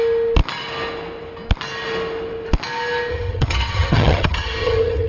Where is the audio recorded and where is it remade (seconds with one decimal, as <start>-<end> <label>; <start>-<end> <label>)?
0.0-3.1 recorded; 3.1-5.1 remade